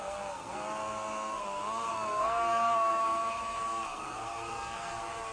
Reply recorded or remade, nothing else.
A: remade